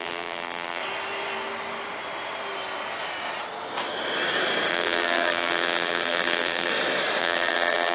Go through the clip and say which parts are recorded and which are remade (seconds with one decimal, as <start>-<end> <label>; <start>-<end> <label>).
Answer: 0.0-0.8 remade; 0.8-4.7 recorded; 4.7-6.7 remade; 6.7-7.2 recorded; 7.2-7.9 remade